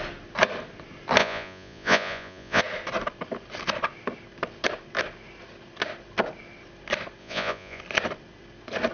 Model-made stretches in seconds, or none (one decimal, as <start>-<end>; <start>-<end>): 1.2-2.6; 7.2-7.8